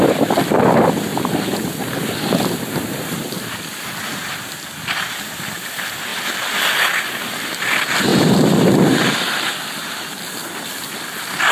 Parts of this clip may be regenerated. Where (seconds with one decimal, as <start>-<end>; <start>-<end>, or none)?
6.1-7.0; 8.1-8.7